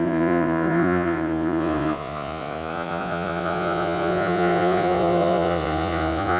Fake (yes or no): yes